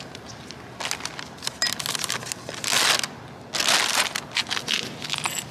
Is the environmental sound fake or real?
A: real